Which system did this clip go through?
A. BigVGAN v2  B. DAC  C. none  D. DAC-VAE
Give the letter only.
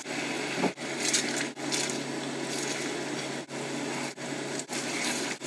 C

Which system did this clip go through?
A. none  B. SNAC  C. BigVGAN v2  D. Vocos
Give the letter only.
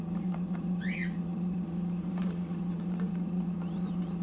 D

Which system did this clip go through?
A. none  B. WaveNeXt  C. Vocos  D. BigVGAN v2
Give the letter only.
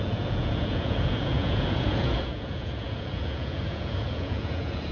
C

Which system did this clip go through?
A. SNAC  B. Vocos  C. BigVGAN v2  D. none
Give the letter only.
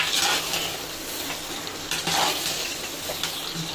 D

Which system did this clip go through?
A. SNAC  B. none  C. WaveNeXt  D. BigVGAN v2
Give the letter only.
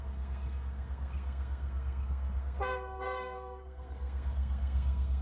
A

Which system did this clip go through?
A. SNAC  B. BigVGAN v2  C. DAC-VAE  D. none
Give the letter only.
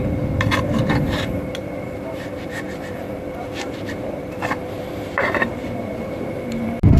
B